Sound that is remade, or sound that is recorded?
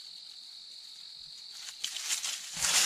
recorded